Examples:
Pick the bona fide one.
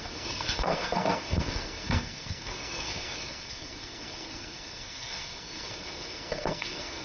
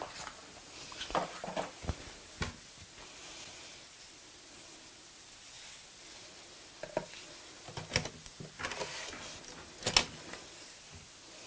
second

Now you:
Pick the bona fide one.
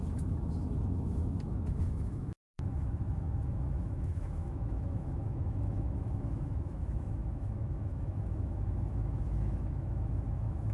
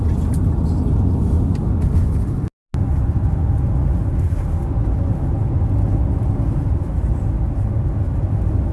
second